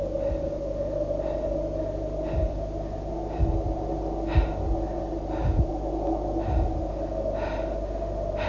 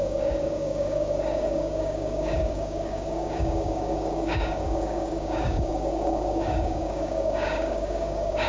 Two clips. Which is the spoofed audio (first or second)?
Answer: second